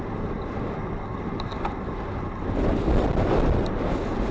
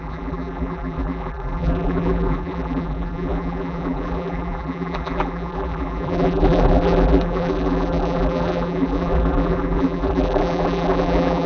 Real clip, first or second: first